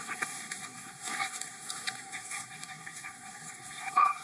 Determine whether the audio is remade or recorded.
remade